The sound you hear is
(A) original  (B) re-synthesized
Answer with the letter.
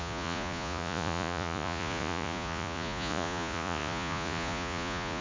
B